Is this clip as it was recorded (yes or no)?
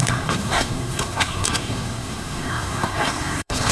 no